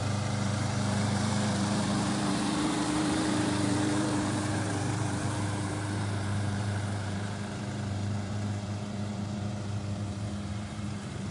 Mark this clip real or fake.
fake